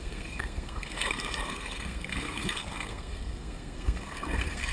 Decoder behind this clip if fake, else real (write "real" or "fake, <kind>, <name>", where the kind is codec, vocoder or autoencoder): fake, codec, SNAC